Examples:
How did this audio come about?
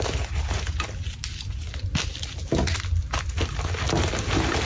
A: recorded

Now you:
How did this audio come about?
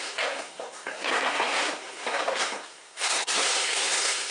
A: remade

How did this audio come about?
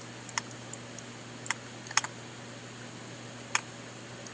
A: recorded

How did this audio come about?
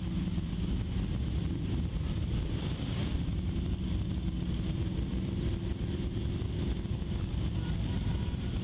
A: recorded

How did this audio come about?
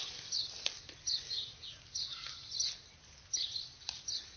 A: recorded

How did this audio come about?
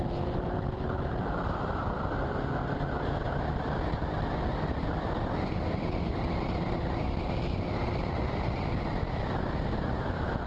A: recorded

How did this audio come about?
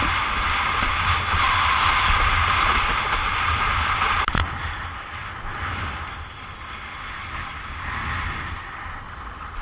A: recorded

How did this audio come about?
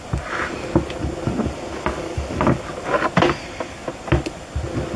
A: recorded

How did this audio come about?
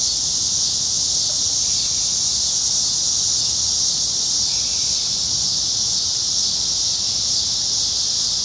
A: recorded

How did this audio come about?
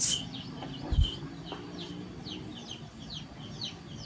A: recorded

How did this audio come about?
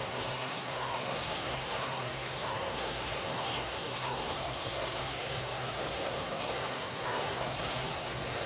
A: remade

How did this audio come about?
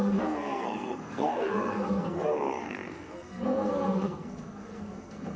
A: remade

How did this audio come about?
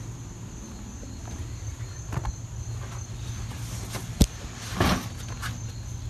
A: recorded